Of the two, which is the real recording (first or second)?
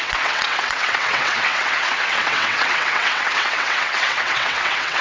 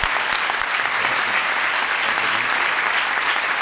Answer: second